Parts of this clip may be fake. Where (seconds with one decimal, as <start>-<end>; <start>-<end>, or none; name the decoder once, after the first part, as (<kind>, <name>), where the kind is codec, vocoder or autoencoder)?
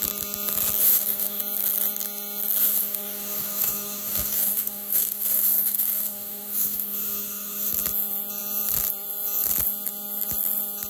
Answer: 0.8-1.4 (codec, DAC); 2.6-7.7